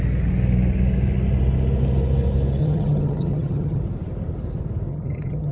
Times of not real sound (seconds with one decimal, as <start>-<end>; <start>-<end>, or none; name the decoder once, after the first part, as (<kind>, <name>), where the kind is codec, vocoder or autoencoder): 2.6-3.8 (vocoder, HiFi-GAN); 4.9-5.5